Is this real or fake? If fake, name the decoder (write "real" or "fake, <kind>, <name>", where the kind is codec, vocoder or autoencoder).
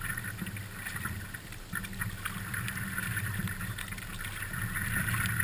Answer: real